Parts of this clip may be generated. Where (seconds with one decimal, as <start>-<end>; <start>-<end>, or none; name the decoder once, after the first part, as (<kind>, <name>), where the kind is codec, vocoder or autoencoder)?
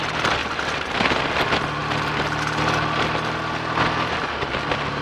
0.4-1.2 (vocoder, BigVGAN v2)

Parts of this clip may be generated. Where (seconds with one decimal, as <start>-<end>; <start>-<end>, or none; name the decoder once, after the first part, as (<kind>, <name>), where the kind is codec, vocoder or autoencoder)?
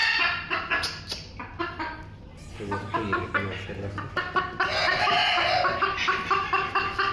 none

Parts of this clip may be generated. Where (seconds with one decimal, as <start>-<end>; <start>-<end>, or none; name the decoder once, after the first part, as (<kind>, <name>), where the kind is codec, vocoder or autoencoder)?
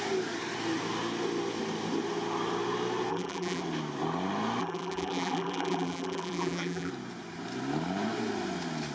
3.1-3.6 (vocoder, BigVGAN v2); 4.6-6.9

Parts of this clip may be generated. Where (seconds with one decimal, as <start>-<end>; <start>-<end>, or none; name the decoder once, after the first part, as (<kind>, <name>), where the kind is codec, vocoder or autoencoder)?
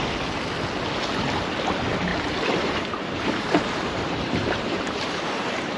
2.1-5.8 (vocoder, BigVGAN v2)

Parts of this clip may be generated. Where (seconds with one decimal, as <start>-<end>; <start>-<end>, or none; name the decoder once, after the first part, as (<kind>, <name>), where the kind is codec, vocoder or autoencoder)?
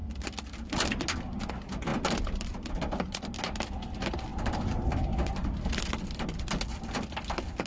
4.3-4.9 (vocoder, BigVGAN v2)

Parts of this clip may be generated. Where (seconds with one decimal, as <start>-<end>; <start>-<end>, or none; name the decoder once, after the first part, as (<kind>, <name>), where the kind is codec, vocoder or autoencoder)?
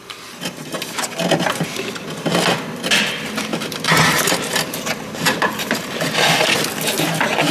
3.5-6.0 (vocoder, BigVGAN v2)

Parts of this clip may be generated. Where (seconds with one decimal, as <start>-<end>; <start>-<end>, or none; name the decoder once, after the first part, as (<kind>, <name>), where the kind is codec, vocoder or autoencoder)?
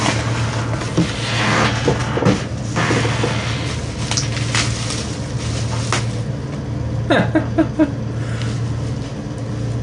none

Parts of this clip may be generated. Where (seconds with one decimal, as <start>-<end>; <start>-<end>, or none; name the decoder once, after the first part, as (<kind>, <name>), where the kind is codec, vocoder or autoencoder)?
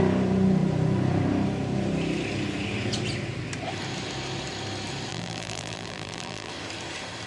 5.1-6.5 (vocoder, BigVGAN v2)